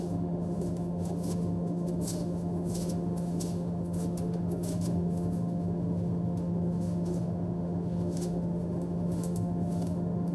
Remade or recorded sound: remade